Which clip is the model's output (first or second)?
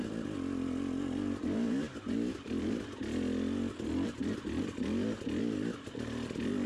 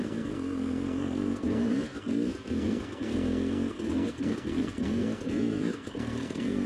second